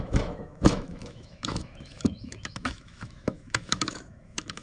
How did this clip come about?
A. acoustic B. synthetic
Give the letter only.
B